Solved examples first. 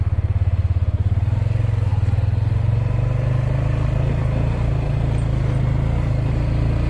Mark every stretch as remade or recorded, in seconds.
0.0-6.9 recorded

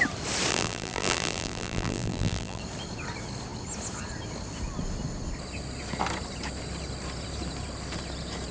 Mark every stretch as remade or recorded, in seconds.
0.0-0.5 recorded; 0.5-2.6 remade; 2.6-8.5 recorded

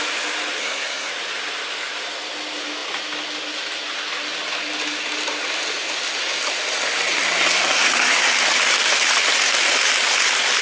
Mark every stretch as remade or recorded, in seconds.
0.0-0.6 recorded; 0.6-1.1 remade; 1.1-10.6 recorded